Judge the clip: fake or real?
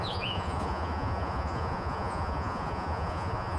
fake